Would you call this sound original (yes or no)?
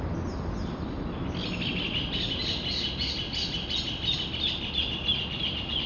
yes